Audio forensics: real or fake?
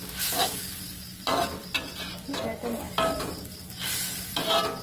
real